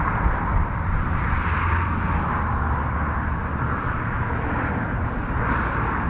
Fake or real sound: fake